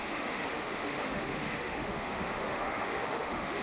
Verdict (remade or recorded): remade